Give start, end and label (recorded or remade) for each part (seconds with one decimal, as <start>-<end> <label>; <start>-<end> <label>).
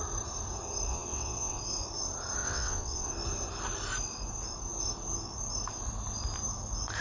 0.0-0.9 recorded; 0.9-1.6 remade; 1.6-2.4 recorded; 2.4-3.1 remade; 3.1-7.0 recorded